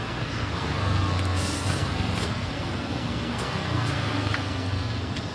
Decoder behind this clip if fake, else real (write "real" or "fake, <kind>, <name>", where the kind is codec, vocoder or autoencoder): fake, codec, SNAC